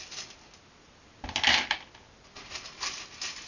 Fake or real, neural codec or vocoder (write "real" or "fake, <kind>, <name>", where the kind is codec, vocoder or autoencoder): real